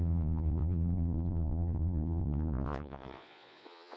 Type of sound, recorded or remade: remade